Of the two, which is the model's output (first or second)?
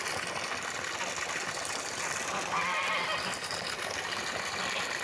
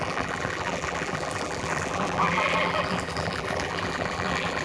second